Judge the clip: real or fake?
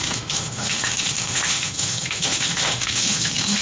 fake